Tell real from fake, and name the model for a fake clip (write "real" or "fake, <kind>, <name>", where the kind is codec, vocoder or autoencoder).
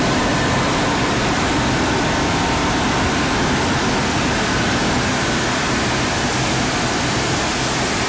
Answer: fake, vocoder, BigVGAN v2